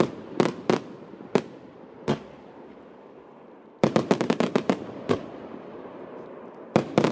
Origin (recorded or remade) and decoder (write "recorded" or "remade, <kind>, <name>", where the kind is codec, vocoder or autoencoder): remade, vocoder, BigVGAN v2